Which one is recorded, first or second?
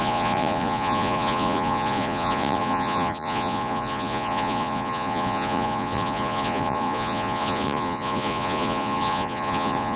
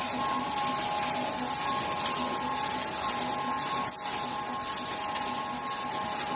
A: second